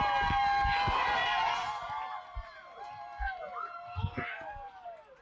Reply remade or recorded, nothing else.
recorded